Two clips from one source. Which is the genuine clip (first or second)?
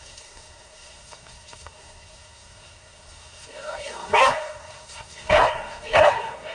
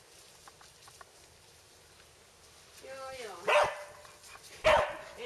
second